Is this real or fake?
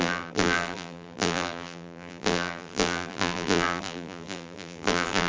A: fake